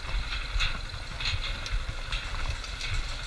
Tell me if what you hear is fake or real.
real